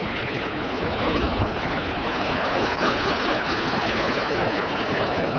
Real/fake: fake